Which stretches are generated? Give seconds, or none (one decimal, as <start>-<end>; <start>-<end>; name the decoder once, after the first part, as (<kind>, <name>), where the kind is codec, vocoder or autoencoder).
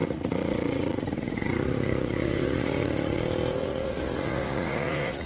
0.0-3.2 (vocoder, Vocos); 3.6-5.3